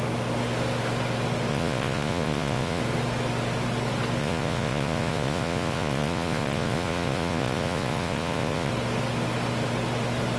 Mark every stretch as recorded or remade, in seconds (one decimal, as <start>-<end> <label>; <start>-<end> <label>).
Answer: 0.0-1.5 recorded; 1.5-2.8 remade; 2.8-4.2 recorded; 4.2-8.7 remade; 8.7-10.4 recorded